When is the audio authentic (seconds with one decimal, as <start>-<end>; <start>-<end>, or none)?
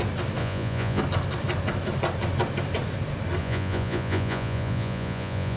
0.0-0.4; 1.0-3.4